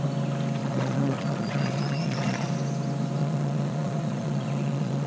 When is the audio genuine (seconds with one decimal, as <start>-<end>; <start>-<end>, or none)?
0.0-0.6; 2.5-3.2